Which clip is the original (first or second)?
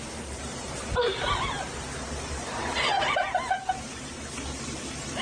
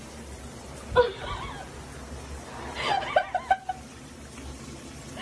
second